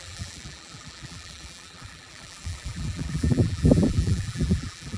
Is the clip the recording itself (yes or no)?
no